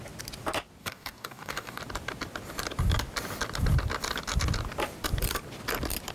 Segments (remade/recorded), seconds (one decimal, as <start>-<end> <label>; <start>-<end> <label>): 0.0-0.8 recorded; 0.8-1.8 remade; 1.8-6.1 recorded